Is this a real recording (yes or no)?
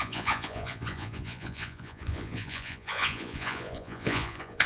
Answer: no